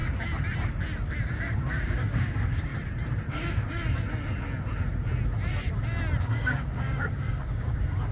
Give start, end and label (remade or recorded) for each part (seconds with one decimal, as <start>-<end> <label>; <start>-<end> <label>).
0.0-1.5 recorded; 1.5-2.7 remade; 2.7-3.3 recorded; 3.3-3.8 remade; 3.8-6.2 recorded; 6.2-8.1 remade